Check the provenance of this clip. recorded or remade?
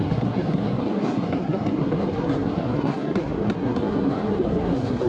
remade